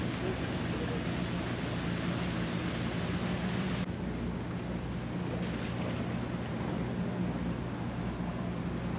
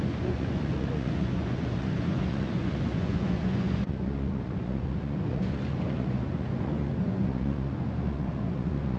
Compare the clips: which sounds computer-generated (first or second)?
second